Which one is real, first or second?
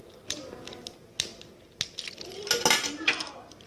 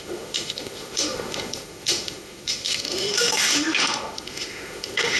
first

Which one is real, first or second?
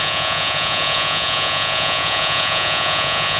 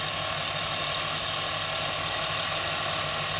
second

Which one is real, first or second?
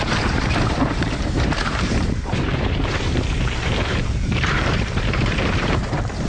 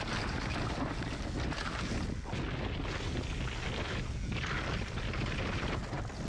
second